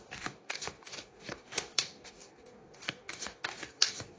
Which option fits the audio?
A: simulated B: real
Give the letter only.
A